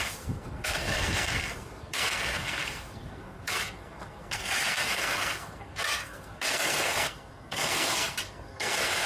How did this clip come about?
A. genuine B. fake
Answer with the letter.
B